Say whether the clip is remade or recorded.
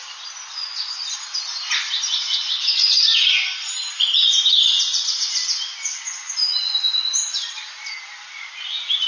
recorded